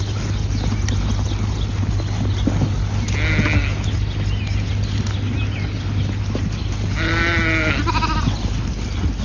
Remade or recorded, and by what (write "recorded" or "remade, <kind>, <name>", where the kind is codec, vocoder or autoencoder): recorded